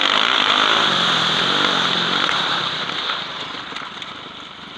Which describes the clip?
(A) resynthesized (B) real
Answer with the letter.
A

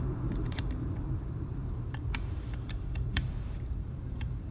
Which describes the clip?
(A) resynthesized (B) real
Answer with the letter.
A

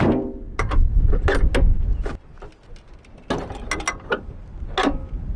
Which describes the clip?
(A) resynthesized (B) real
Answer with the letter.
B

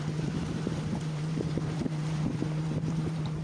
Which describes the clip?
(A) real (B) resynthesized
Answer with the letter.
B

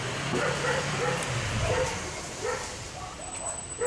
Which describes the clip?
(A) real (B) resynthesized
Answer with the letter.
B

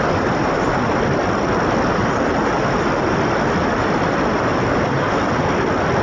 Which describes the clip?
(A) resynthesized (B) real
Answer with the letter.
A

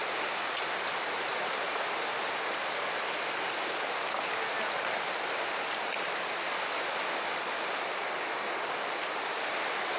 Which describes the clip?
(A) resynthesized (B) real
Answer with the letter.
B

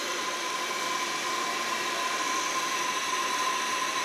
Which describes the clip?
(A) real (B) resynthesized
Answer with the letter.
B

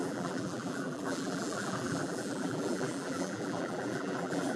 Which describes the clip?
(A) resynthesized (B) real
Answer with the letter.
A